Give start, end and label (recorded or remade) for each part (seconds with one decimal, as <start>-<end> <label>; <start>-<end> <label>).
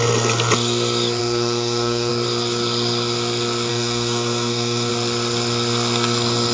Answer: 0.0-1.2 recorded; 1.2-2.1 remade; 2.1-3.7 recorded; 3.7-4.9 remade; 4.9-6.5 recorded